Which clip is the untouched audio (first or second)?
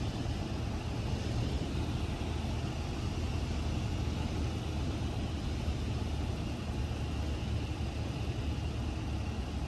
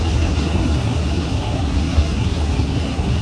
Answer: first